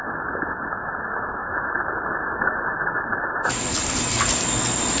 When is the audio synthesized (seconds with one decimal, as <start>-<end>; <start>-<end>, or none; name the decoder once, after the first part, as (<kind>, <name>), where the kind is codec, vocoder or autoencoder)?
1.4-4.4 (vocoder, BigVGAN v2)